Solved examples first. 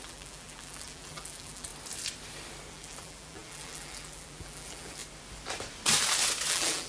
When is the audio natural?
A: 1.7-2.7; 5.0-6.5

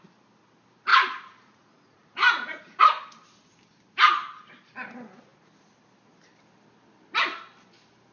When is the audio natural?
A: 0.0-0.9; 2.8-8.1

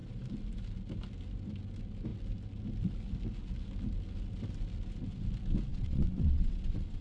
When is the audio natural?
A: 0.0-5.7

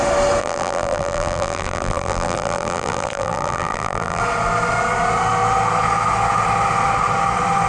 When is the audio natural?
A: 0.0-0.4; 4.2-7.7

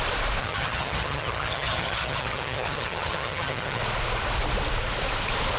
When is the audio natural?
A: 0.0-0.4; 3.8-5.6

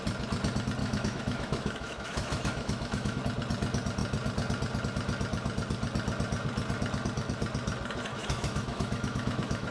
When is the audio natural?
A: 0.0-0.8; 3.2-8.1

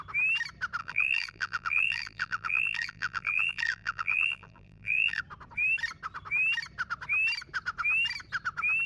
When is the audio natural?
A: 0.0-0.8; 5.2-8.9

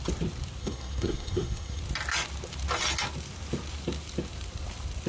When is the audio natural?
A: 0.0-0.6; 1.8-5.1